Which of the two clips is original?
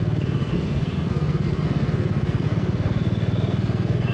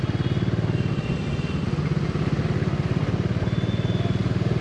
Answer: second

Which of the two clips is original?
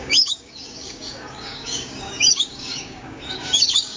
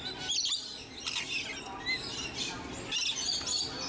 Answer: second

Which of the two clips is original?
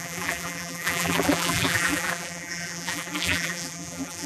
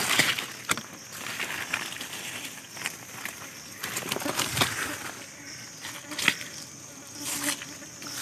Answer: second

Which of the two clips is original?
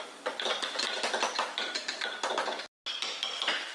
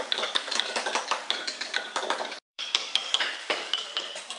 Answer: first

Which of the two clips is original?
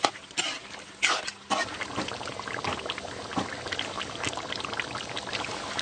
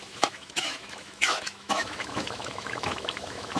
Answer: first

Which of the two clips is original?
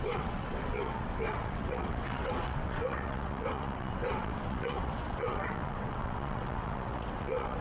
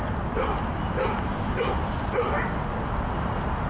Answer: second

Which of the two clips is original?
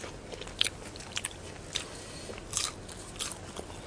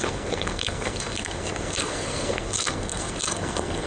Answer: first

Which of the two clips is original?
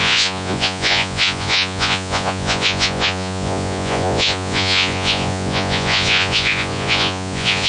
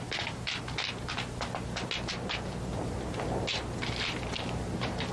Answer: second